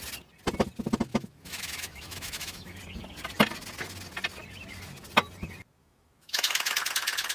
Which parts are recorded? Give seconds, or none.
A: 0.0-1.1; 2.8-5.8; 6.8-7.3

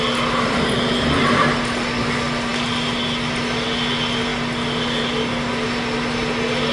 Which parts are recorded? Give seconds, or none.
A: 0.0-6.7

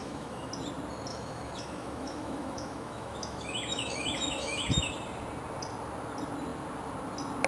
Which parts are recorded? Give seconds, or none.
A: 0.5-1.1; 4.9-7.5

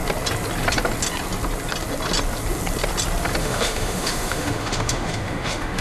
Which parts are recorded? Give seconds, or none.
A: 0.0-3.4

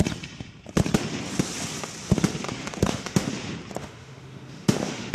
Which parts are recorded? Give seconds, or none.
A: 0.0-2.6; 3.3-3.8